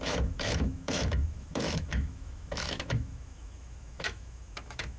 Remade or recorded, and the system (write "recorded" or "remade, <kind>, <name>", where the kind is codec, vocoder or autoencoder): remade, autoencoder, DAC-VAE